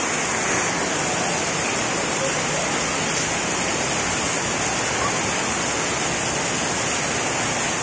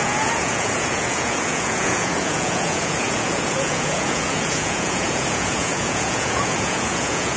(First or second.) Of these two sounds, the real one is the first